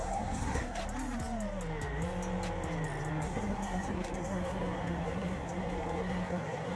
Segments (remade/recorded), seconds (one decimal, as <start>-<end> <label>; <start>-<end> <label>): 0.0-0.8 remade; 0.8-3.1 recorded; 3.1-6.8 remade